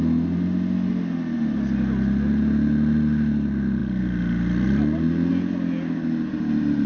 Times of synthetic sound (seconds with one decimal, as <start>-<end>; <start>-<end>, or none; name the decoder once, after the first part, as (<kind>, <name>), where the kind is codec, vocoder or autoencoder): none